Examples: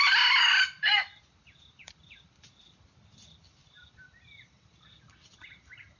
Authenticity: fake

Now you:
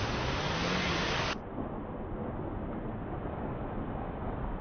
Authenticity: real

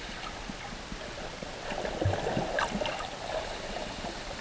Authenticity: real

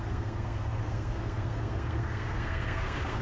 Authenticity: fake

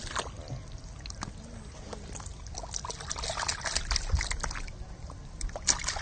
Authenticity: real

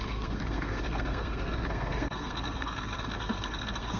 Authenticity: fake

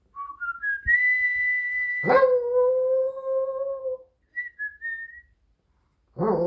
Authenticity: real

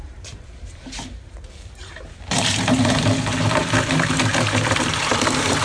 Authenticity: fake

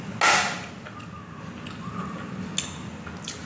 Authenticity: real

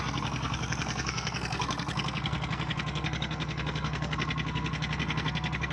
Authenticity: fake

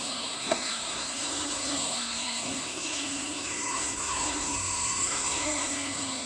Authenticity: fake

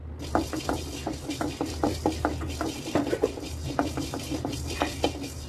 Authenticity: real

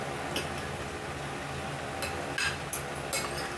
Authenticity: real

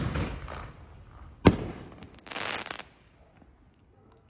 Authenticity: real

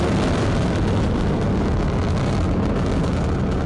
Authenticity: real